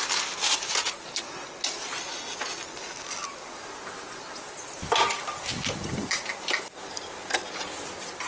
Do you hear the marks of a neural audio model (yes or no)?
no